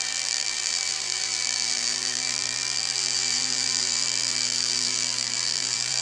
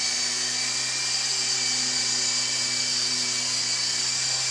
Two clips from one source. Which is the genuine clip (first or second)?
second